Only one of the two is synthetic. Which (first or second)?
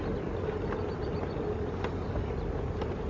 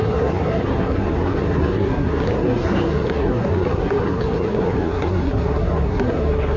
second